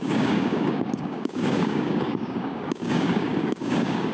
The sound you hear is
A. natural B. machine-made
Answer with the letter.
B